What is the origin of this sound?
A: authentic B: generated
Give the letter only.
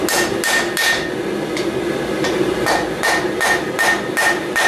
A